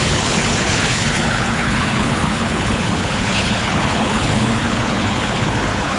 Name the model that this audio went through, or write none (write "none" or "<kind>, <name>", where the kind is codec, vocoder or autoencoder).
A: codec, HILCodec